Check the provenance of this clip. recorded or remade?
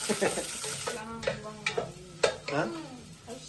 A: recorded